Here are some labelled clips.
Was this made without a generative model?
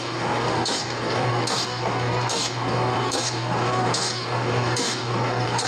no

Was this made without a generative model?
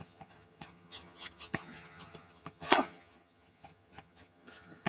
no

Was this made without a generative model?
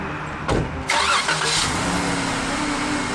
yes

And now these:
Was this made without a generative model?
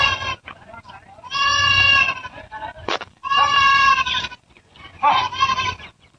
no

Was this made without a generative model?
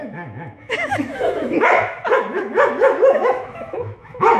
no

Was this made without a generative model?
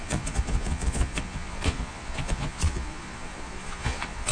no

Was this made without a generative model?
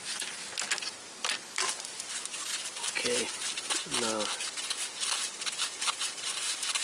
yes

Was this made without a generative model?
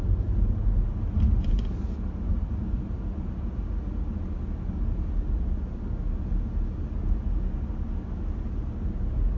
yes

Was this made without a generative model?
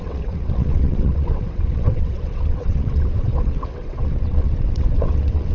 no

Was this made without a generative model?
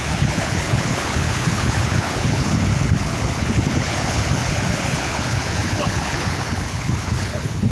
no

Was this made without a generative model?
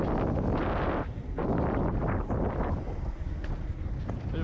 yes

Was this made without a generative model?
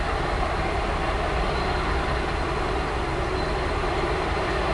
yes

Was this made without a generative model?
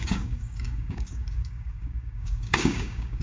no